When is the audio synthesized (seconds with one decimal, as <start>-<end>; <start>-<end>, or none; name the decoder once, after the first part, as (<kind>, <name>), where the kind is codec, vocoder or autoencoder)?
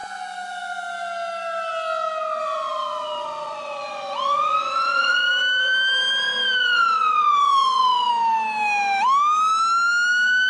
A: 2.4-5.3 (vocoder, Vocos); 6.6-8.1